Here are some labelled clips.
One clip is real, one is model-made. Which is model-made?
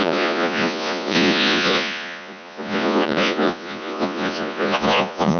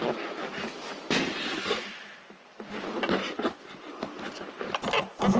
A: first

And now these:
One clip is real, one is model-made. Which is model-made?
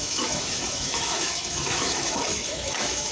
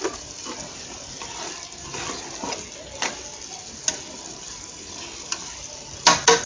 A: first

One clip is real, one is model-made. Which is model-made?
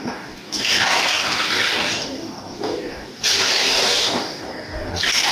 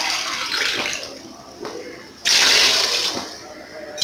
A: first